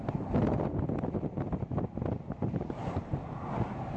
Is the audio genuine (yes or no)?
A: yes